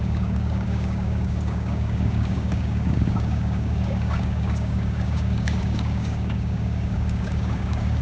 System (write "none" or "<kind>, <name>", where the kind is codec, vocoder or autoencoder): codec, DAC